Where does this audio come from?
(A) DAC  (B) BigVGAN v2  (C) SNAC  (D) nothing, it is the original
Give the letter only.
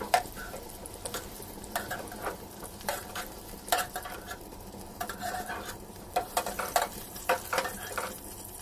B